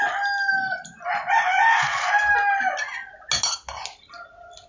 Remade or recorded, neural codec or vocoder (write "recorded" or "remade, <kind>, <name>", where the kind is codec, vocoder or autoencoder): recorded